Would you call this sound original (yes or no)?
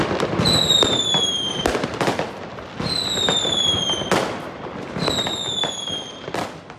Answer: yes